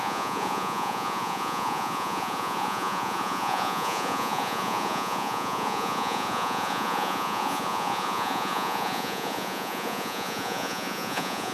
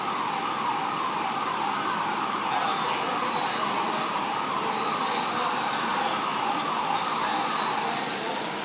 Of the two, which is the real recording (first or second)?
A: second